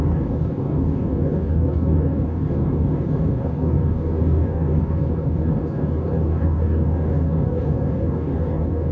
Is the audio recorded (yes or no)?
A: no